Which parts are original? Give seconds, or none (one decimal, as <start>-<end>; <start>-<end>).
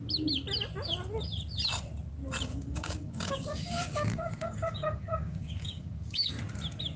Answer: 0.0-2.5; 6.3-7.0